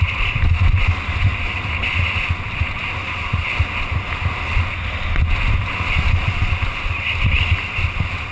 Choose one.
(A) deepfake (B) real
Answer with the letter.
B